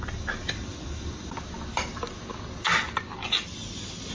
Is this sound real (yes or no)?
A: yes